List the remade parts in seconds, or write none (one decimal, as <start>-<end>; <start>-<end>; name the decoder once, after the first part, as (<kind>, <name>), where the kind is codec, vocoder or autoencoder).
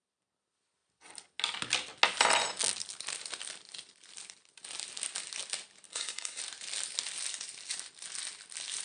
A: 5.9-6.4 (codec, SNAC)